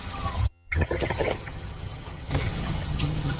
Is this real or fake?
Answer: fake